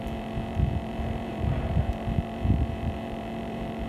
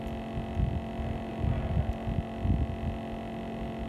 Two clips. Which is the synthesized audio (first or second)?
first